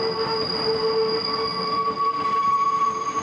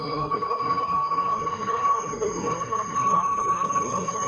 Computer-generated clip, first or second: second